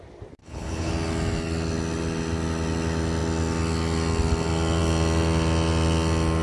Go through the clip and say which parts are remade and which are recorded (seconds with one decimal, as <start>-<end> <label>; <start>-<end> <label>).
0.0-0.4 recorded; 0.4-0.9 remade; 0.9-6.4 recorded